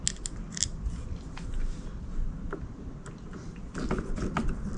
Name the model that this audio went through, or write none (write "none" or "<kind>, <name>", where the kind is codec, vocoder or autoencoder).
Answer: none